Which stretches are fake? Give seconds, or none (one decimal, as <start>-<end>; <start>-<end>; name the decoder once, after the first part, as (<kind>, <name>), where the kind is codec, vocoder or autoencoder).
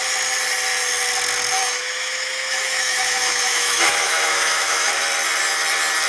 1.6-4.9 (autoencoder, DAC-VAE)